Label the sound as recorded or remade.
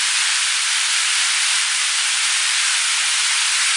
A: recorded